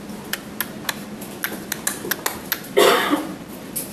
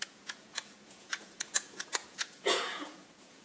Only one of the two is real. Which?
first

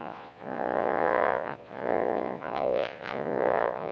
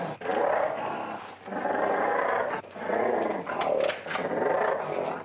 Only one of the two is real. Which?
second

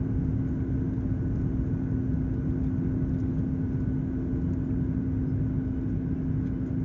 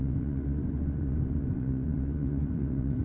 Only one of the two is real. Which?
first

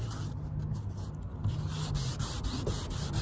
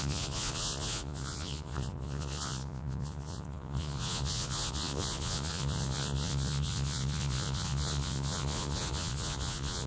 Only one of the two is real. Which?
first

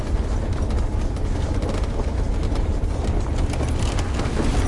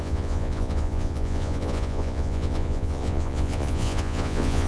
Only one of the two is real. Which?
first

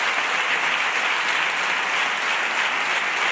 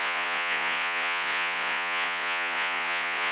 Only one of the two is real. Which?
first